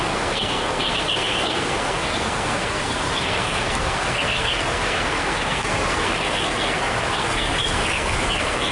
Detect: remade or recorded remade